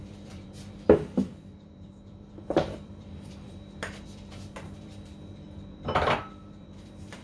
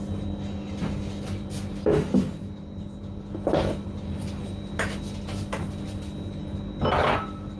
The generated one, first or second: first